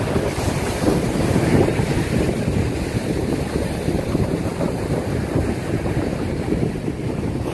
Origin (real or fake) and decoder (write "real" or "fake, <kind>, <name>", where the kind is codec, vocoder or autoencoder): fake, vocoder, BigVGAN v2